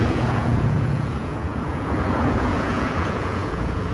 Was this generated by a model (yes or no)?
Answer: yes